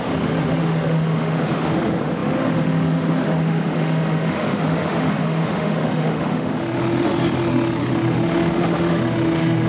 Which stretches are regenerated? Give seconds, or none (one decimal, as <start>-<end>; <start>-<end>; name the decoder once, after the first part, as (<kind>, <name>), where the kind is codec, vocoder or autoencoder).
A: 0.0-9.7 (autoencoder, DAC-VAE)